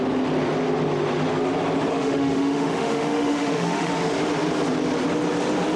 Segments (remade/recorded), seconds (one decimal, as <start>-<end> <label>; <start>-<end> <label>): 0.0-1.9 recorded; 1.9-3.9 remade; 3.9-5.8 recorded